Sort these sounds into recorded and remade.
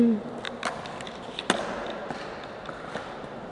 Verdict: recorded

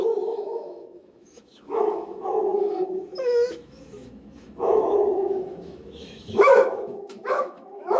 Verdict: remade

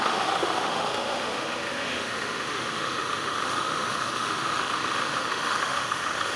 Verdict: remade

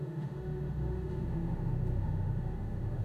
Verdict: remade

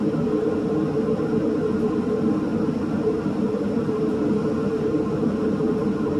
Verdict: recorded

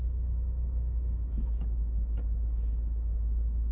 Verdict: remade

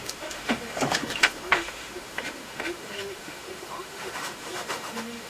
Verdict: remade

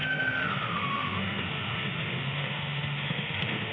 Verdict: remade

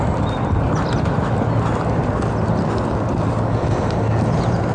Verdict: recorded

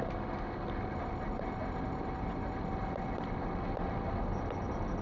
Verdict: recorded